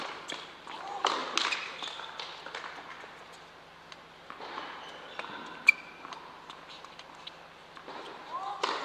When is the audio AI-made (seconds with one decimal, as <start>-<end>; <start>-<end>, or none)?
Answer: none